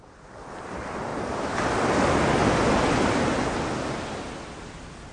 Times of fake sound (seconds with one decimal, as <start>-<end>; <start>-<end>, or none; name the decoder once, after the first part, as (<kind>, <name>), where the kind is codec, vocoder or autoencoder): none